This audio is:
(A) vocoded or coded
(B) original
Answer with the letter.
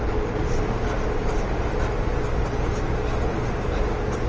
B